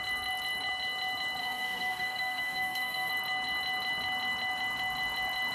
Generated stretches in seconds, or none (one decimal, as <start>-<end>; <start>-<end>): 1.4-3.1